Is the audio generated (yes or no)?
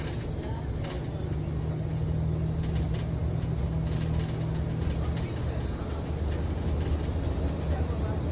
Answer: no